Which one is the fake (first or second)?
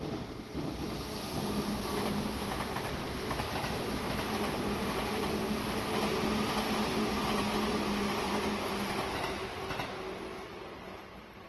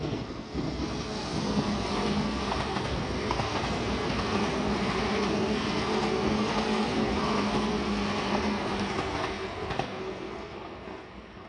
second